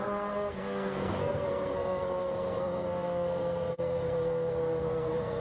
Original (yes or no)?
no